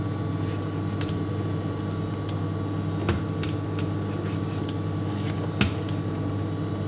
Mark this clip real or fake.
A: real